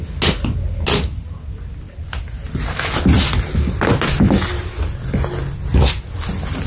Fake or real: real